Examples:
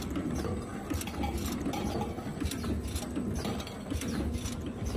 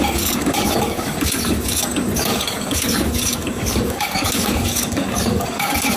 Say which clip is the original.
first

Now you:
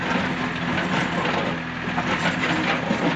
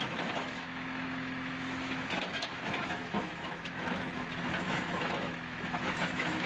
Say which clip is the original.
first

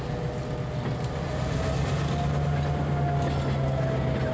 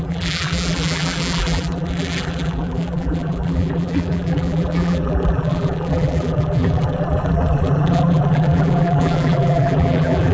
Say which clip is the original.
first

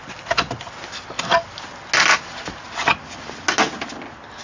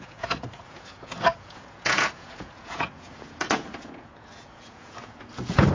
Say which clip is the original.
first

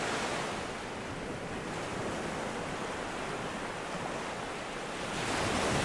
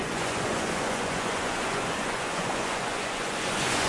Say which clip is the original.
first